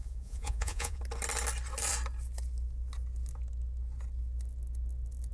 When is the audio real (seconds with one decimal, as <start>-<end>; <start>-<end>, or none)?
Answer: 1.0-5.3